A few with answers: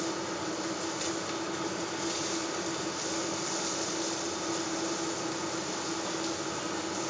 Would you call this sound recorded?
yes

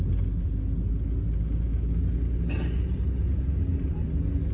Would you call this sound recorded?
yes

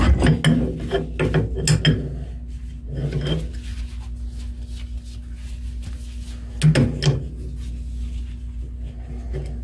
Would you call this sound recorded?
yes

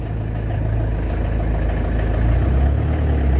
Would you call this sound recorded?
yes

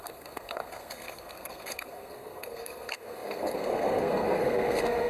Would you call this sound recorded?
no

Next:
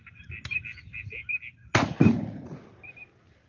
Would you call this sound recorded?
yes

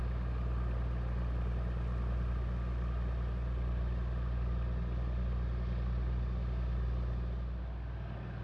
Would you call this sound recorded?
yes